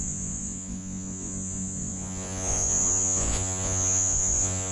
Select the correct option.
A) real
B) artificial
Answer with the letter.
B